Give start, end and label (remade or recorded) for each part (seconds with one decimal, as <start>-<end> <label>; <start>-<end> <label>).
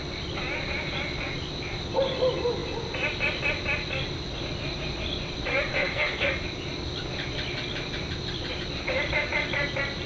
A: 0.0-5.7 recorded; 5.7-6.3 remade; 6.3-10.1 recorded